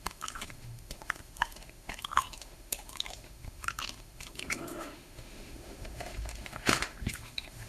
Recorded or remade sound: remade